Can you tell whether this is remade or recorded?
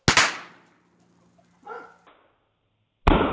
recorded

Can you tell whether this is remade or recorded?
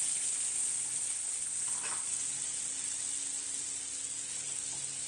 recorded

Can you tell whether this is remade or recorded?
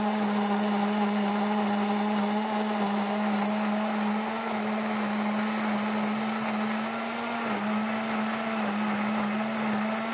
recorded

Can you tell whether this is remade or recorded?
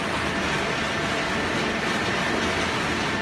recorded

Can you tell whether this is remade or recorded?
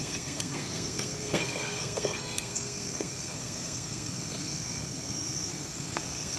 remade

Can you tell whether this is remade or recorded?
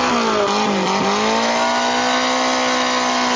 recorded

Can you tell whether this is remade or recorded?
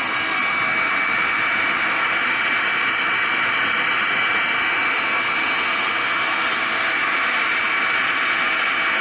recorded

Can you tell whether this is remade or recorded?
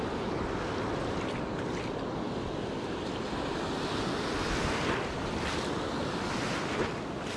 recorded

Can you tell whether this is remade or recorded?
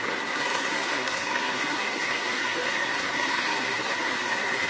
remade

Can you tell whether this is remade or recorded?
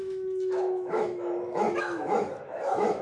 remade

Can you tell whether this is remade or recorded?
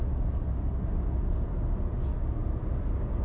recorded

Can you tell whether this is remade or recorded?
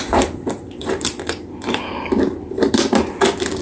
remade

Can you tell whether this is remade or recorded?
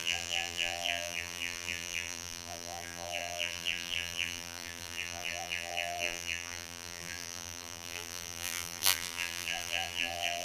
remade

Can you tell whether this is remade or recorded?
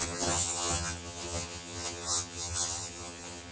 remade